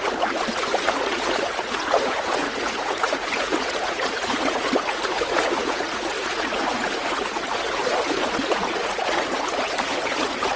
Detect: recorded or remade remade